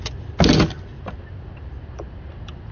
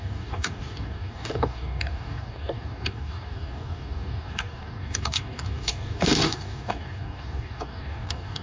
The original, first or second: first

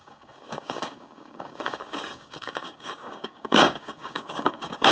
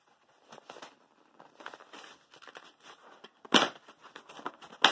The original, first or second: second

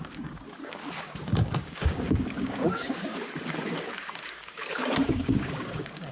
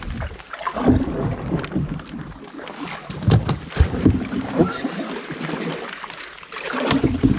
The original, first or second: second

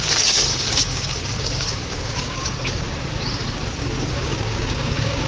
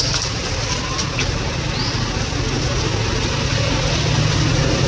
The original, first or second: second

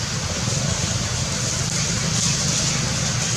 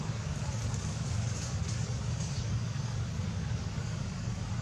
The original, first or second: first